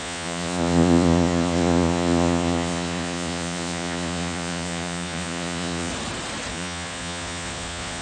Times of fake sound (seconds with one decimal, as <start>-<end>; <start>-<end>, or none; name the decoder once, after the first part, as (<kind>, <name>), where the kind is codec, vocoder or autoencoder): 0.0-5.9 (vocoder, Vocos); 6.5-8.0